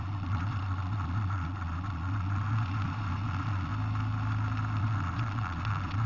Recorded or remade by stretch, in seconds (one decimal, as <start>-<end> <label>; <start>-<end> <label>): 0.0-3.7 remade; 3.7-4.8 recorded; 4.8-6.1 remade